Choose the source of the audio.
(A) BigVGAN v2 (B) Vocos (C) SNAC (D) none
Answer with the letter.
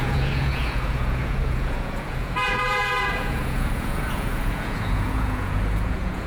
B